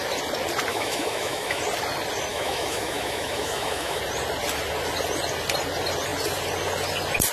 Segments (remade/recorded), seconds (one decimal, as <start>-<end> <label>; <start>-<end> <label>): 0.0-0.7 recorded; 0.7-1.6 remade; 1.6-2.3 recorded; 2.3-4.0 remade; 4.0-7.3 recorded